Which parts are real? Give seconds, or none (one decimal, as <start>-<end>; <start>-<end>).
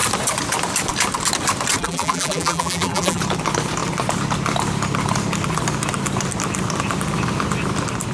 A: 0.0-1.8; 3.2-8.1